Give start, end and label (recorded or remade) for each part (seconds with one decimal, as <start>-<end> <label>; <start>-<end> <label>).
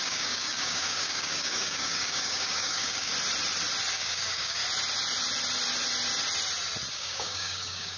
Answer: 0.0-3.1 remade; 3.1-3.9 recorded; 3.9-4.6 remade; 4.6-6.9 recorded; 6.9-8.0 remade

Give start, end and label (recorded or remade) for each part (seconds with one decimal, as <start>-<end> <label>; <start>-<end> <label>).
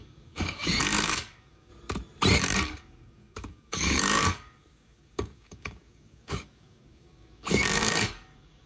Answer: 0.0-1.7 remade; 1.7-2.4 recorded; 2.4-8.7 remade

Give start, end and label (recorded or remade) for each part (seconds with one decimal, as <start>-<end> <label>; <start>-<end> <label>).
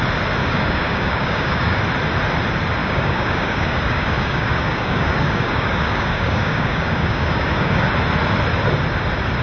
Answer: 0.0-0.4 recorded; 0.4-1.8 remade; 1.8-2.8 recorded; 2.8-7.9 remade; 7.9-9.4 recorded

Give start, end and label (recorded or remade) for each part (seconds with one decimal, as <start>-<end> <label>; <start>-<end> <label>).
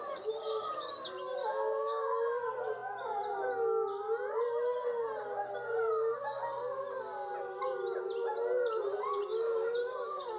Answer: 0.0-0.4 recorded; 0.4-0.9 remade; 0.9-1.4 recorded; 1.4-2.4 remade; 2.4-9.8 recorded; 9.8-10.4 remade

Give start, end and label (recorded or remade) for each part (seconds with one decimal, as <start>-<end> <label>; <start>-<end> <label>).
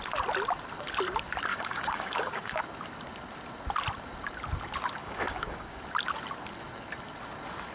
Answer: 0.0-1.5 recorded; 1.5-2.6 remade; 2.6-5.0 recorded; 5.0-5.8 remade; 5.8-7.7 recorded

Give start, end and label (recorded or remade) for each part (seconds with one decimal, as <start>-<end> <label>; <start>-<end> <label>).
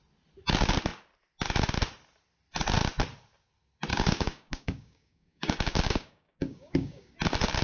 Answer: 0.0-3.9 recorded; 3.9-7.1 remade; 7.1-7.6 recorded